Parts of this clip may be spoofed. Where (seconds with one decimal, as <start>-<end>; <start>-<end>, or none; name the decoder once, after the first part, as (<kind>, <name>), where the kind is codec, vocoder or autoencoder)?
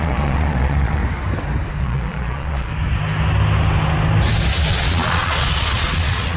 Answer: 0.0-1.0 (vocoder, Vocos); 1.8-2.7; 4.7-6.4